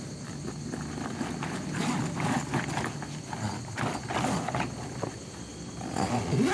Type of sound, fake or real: real